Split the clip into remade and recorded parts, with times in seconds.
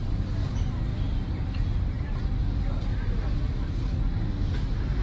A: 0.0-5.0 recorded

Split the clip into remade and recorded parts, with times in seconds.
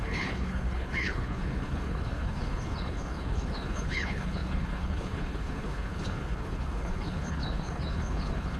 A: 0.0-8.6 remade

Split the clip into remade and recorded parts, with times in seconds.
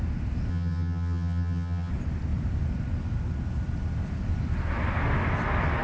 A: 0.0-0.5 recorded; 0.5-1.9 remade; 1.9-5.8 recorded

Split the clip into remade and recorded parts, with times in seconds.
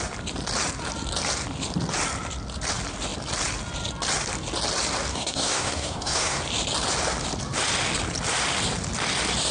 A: 0.0-5.1 recorded; 5.1-6.4 remade; 6.4-9.5 recorded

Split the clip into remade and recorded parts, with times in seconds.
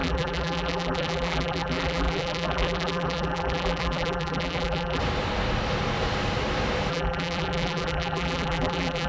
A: 0.0-5.0 remade; 5.0-6.9 recorded; 6.9-9.1 remade